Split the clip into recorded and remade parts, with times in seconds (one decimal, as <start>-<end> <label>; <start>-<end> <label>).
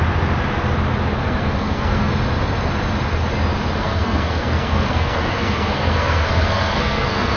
0.0-1.2 recorded; 1.2-2.1 remade; 2.1-3.8 recorded; 3.8-7.4 remade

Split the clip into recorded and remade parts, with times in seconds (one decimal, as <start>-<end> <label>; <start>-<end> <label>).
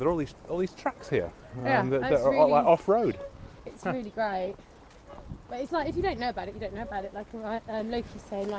0.0-8.6 recorded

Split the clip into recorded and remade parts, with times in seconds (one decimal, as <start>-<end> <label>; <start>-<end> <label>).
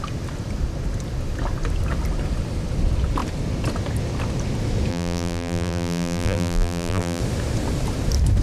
0.0-4.9 recorded; 4.9-7.2 remade; 7.2-8.4 recorded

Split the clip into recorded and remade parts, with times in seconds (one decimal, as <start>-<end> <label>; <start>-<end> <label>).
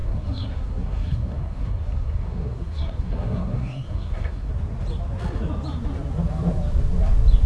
0.0-4.5 remade; 4.5-7.5 recorded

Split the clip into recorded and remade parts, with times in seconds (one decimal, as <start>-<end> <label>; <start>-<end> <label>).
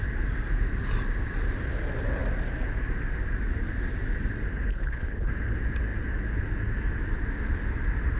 0.0-4.7 recorded; 4.7-5.3 remade; 5.3-8.2 recorded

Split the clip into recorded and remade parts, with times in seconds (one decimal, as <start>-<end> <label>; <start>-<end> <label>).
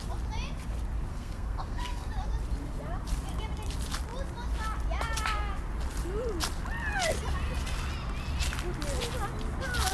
0.0-1.1 recorded; 1.1-2.1 remade; 2.1-9.9 recorded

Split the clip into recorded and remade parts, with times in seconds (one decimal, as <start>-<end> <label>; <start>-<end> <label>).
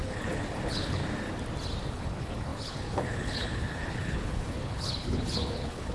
0.0-1.0 remade; 1.0-1.9 recorded; 1.9-5.9 remade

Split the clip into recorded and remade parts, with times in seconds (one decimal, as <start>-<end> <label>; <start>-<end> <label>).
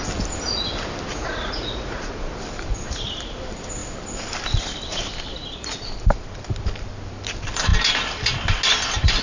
0.0-1.1 recorded; 1.1-2.3 remade; 2.3-9.2 recorded